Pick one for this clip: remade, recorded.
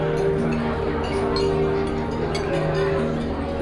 recorded